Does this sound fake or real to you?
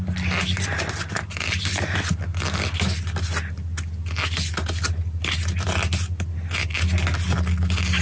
real